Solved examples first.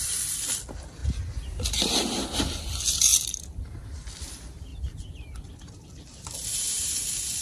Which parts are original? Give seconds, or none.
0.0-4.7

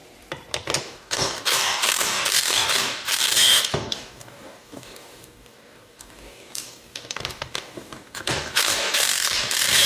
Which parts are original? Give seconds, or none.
0.0-0.8

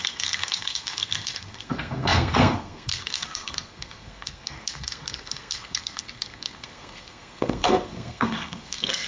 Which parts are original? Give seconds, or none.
none

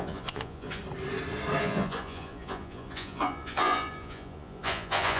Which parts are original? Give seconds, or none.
0.8-1.6